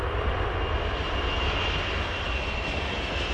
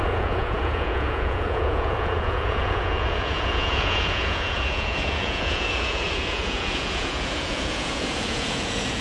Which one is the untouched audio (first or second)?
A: first